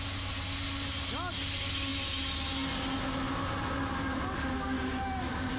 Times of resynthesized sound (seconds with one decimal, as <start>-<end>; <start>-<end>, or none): none